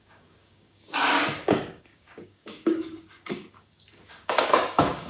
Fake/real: fake